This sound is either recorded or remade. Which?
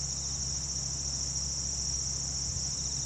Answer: recorded